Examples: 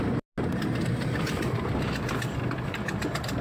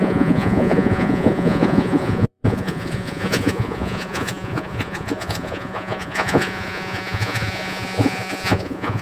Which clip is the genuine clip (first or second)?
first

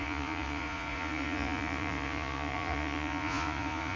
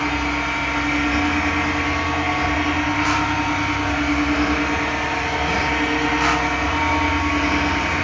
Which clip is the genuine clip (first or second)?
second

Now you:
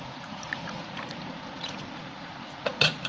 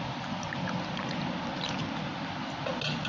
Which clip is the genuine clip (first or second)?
second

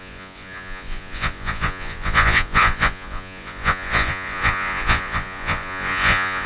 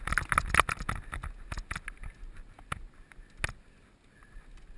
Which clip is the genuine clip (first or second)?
second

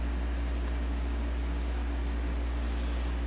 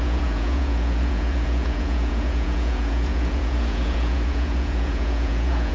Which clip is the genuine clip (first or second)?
first